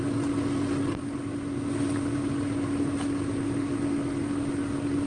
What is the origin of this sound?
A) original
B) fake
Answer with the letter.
A